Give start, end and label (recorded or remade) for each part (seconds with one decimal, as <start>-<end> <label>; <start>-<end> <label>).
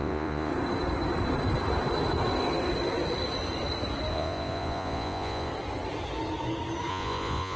0.0-0.5 remade; 0.5-4.1 recorded; 4.1-5.5 remade; 5.5-6.9 recorded; 6.9-7.6 remade